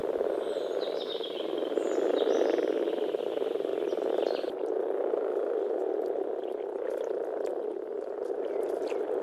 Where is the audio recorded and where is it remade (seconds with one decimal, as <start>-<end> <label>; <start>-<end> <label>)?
0.0-9.2 recorded